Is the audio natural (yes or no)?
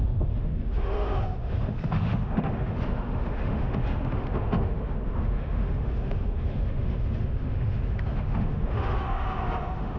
no